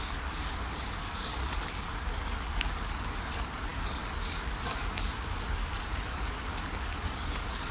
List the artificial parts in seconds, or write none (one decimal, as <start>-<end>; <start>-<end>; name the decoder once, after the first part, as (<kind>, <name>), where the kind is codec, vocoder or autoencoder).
0.0-7.7 (codec, DAC)